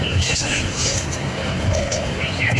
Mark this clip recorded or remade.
remade